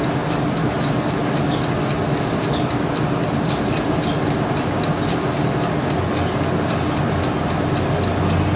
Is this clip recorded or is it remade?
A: recorded